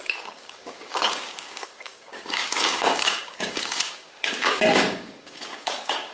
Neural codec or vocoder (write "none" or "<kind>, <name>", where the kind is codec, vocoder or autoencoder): codec, DAC